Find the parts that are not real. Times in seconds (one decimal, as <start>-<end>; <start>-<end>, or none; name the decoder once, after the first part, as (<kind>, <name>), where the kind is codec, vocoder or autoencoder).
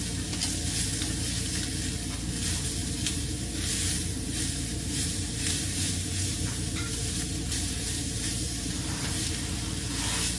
2.8-7.0 (vocoder, BigVGAN v2); 7.4-9.3